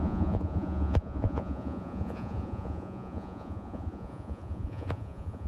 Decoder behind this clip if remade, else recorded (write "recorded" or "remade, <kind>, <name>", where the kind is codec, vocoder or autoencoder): remade, vocoder, Vocos